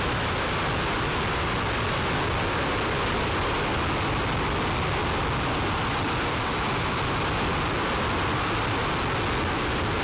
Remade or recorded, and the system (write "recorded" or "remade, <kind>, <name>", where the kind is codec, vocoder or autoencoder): recorded